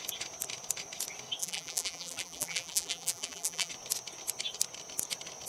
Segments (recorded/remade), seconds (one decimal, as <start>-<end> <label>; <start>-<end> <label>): 0.0-1.4 recorded; 1.4-3.7 remade; 3.7-5.5 recorded